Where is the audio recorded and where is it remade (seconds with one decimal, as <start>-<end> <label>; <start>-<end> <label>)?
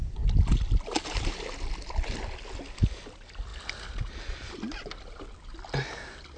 0.0-6.4 recorded